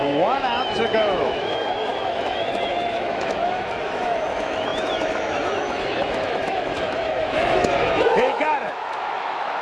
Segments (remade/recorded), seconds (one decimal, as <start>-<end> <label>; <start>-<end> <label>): 0.0-9.6 remade